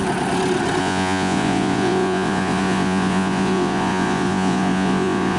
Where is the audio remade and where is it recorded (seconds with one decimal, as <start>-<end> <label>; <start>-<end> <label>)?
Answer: 0.0-0.8 recorded; 0.8-5.4 remade